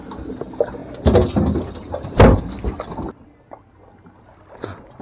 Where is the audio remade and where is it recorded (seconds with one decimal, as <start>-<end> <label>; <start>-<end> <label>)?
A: 0.0-5.0 recorded